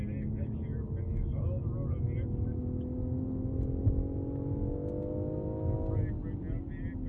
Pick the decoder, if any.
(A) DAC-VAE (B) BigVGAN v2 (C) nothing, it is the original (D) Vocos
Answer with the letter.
C